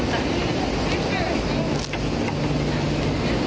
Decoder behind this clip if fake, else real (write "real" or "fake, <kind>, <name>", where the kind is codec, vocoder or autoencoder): real